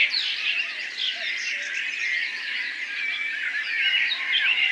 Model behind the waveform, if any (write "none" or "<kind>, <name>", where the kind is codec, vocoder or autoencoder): none